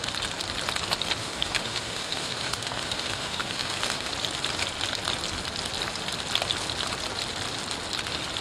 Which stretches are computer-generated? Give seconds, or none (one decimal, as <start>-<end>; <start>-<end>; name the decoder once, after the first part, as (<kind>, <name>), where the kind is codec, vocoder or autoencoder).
1.2-4.1 (autoencoder, DAC-VAE)